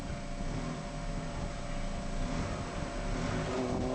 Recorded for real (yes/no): yes